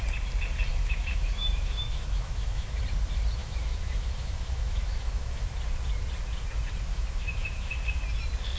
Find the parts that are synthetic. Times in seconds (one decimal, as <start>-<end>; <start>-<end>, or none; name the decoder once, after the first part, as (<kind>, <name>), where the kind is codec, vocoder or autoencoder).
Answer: 0.7-2.8 (autoencoder, DAC-VAE); 3.4-5.4; 6.9-7.7